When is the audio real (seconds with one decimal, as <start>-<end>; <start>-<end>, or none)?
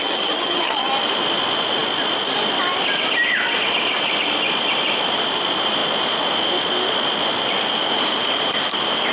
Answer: 0.9-9.1